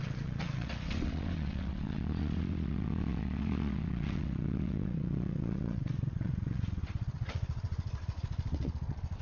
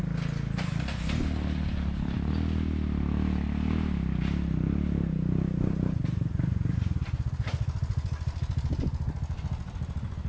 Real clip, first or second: second